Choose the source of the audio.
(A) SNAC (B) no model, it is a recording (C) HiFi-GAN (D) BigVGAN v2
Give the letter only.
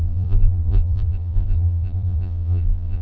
D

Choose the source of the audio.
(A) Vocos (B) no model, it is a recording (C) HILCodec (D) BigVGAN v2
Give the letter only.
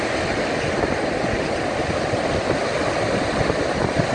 B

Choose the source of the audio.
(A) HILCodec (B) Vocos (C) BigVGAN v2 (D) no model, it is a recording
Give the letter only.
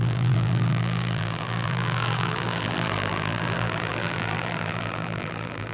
C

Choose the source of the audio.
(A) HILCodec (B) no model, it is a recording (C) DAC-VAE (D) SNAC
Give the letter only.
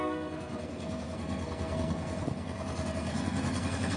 D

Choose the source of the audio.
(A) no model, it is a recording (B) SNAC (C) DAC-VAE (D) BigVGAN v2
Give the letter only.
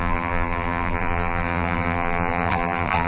D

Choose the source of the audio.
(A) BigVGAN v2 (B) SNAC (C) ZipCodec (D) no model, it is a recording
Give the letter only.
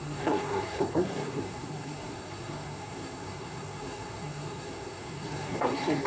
B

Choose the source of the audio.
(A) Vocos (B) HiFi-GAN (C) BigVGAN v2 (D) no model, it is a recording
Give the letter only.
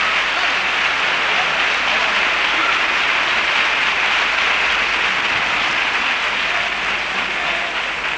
D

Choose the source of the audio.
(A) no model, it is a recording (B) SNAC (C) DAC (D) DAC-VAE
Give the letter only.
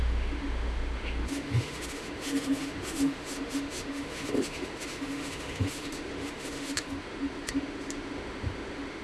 D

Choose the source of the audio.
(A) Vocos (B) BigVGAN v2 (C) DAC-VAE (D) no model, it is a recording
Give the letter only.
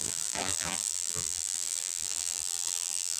B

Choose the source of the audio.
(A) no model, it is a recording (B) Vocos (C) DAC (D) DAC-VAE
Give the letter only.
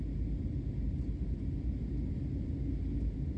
A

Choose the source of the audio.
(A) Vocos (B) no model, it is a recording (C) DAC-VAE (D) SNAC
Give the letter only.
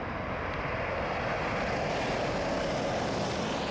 B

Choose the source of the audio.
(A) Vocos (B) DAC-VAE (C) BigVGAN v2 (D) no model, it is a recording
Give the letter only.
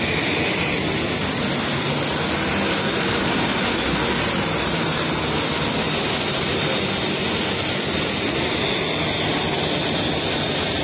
D